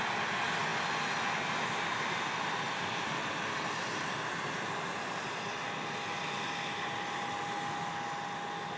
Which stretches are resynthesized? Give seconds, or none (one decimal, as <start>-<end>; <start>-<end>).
none